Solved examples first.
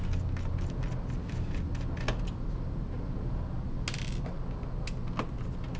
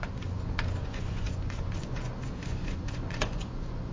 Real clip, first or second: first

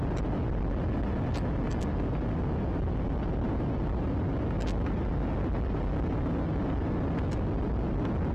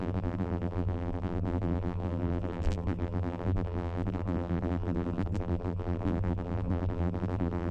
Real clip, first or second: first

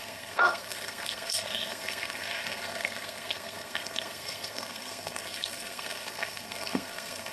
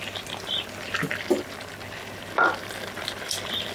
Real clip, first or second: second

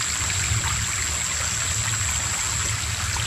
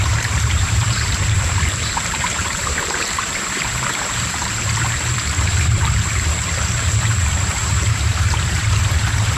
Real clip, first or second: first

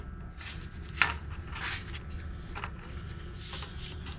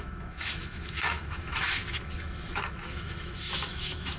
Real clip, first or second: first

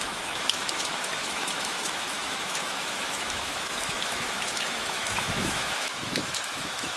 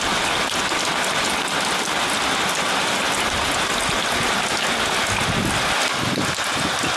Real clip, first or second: second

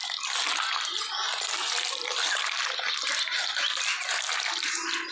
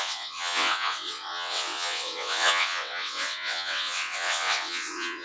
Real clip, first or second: first